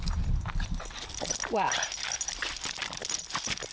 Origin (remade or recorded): recorded